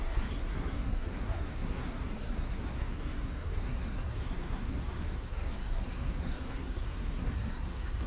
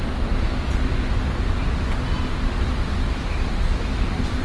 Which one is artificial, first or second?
first